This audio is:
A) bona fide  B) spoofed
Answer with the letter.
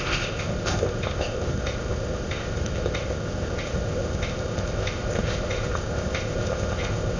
B